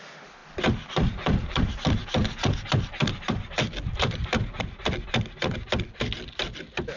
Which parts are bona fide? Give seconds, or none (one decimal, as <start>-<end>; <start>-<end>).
0.0-7.0